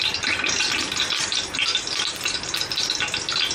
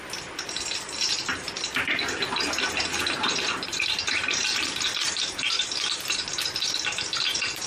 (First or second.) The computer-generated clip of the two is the second